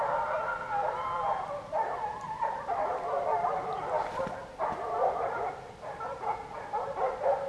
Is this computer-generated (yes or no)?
yes